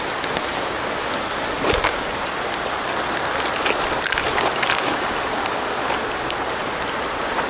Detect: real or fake real